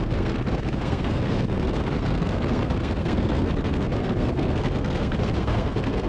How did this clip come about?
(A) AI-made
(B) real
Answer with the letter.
A